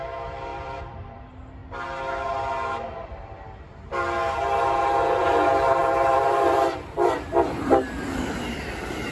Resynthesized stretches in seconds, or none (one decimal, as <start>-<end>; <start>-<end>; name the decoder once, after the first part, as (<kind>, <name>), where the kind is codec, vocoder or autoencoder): 0.5-1.2 (vocoder, BigVGAN v2); 5.8-9.1